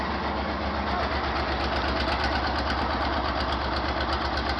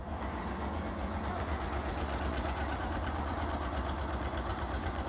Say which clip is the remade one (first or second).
second